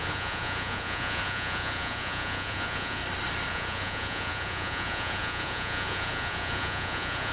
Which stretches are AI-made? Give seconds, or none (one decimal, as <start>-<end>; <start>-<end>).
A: 0.0-3.0; 3.5-7.3